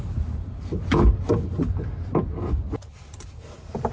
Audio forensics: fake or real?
real